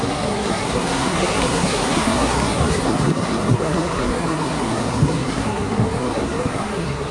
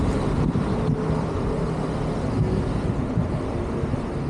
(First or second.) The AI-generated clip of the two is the first